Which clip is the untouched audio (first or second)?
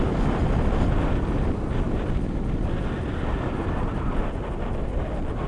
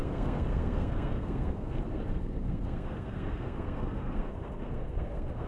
first